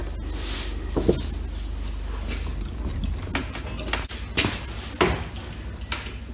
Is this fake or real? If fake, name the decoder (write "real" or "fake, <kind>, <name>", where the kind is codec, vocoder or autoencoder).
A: real